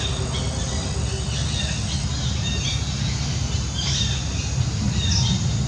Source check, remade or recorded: recorded